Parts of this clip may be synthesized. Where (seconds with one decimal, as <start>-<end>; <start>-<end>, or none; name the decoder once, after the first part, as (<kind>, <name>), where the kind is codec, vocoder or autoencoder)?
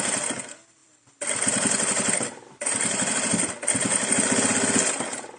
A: 0.8-3.5 (vocoder, BigVGAN v2)